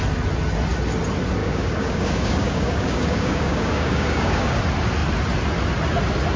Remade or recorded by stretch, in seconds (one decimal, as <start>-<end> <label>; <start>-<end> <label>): 0.0-1.4 recorded; 1.4-4.6 remade; 4.6-6.4 recorded